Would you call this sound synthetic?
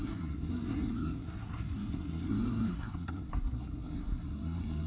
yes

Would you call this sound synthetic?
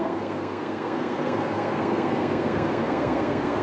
yes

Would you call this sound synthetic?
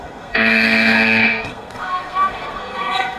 yes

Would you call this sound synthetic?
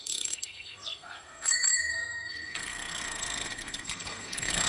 yes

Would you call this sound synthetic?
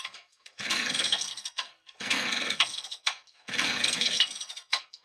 yes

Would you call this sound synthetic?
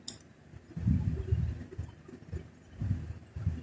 no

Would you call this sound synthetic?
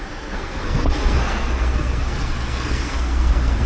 yes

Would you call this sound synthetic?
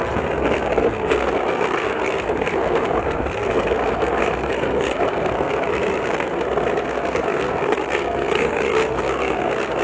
yes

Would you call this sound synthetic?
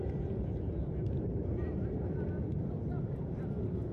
no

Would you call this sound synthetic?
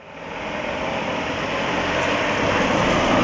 no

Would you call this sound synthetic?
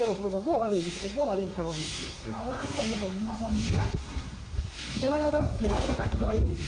yes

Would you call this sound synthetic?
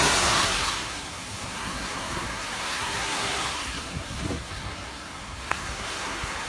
yes